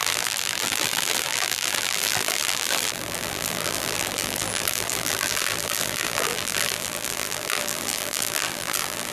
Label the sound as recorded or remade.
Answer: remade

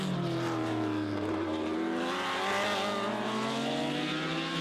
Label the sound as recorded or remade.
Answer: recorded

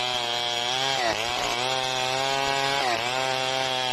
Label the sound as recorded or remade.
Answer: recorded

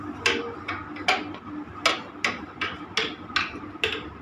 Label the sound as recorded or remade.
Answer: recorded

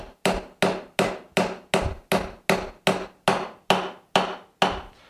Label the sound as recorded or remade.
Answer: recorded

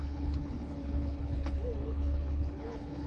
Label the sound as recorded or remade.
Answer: remade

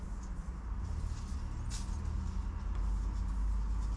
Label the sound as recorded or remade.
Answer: recorded